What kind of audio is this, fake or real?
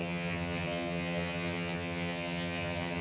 fake